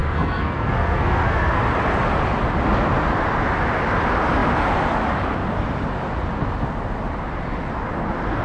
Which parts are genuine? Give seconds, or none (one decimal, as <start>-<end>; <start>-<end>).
1.6-8.4